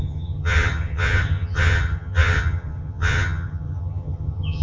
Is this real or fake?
fake